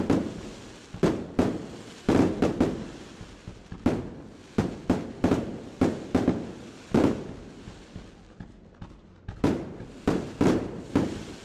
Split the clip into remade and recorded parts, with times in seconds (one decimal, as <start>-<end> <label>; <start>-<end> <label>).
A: 0.0-11.4 recorded